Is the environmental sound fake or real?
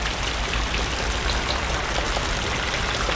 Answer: real